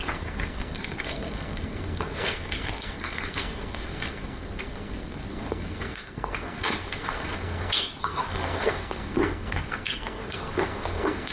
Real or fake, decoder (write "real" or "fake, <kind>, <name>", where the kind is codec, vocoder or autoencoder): fake, codec, SNAC